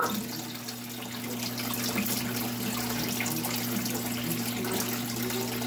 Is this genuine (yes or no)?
yes